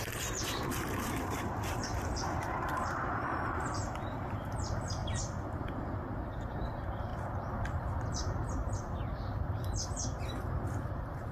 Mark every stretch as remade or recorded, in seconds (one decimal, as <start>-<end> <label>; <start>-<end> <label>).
0.0-5.0 remade; 5.0-6.3 recorded; 6.3-7.1 remade; 7.1-8.1 recorded; 8.1-10.0 remade; 10.0-10.9 recorded; 10.9-11.3 remade